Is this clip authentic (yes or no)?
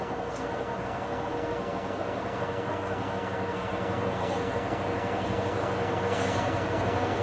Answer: no